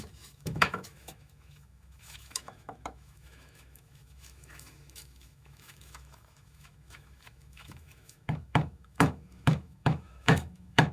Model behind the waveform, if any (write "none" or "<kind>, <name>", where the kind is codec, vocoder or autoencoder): autoencoder, DAC-VAE